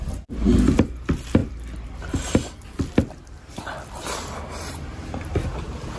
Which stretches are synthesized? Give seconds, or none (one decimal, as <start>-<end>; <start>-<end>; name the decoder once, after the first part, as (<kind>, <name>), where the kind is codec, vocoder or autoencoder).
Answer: none